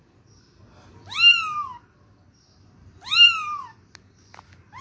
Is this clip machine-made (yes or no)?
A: no